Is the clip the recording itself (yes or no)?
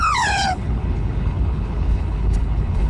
no